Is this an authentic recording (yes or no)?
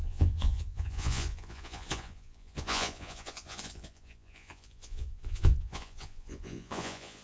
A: no